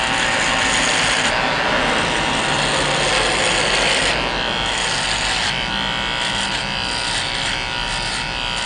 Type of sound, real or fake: real